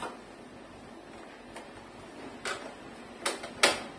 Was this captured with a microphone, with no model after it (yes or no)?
yes